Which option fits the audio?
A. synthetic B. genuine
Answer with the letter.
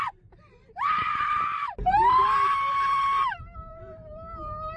A